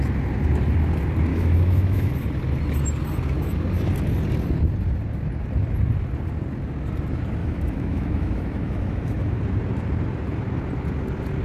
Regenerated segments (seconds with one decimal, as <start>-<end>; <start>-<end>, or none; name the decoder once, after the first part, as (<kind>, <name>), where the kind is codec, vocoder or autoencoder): 1.3-2.1 (autoencoder, DAC-VAE); 7.4-9.4